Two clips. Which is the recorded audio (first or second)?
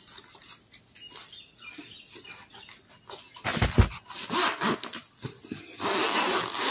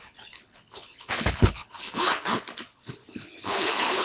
first